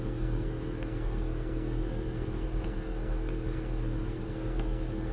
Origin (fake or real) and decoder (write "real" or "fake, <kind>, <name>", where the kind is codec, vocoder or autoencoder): fake, codec, SNAC